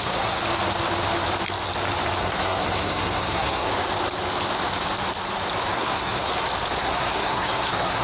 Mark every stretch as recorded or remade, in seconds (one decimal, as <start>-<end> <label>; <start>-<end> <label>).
0.0-0.4 remade; 0.4-2.2 recorded; 2.2-3.7 remade; 3.7-5.7 recorded; 5.7-6.3 remade; 6.3-6.8 recorded; 6.8-8.0 remade